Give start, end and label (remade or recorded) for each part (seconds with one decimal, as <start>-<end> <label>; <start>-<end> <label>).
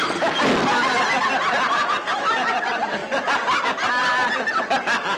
0.0-5.2 recorded